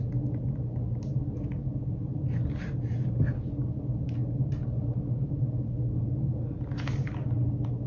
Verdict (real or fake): real